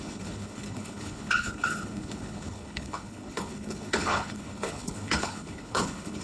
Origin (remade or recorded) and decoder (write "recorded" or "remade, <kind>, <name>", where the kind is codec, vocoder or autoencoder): remade, codec, HILCodec